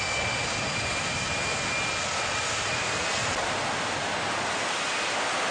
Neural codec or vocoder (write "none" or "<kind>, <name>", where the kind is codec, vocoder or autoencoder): none